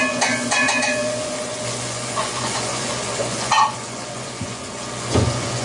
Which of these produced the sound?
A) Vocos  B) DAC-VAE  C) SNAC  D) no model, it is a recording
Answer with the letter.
A